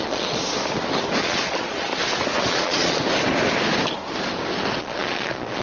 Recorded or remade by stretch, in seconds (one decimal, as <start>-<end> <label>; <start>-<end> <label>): 0.0-0.4 remade; 0.4-1.2 recorded; 1.2-1.9 remade; 1.9-2.5 recorded; 2.5-3.0 remade; 3.0-4.8 recorded; 4.8-5.6 remade